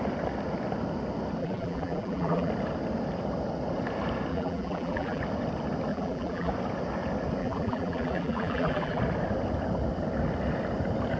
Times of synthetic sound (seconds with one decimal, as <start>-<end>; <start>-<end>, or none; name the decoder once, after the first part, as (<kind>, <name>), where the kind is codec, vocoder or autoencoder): 1.4-2.5 (vocoder, BigVGAN v2); 4.3-5.2; 5.9-6.5; 7.4-9.0